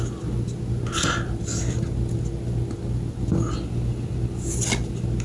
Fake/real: real